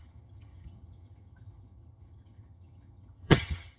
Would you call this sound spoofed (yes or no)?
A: yes